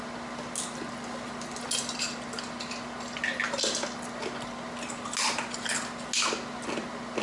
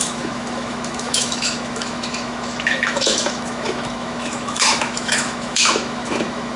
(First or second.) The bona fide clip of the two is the first